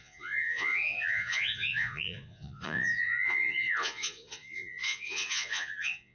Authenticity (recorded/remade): remade